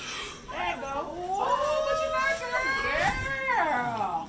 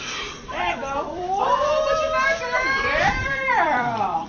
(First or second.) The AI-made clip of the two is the second